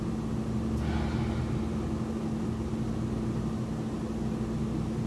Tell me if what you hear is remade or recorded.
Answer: recorded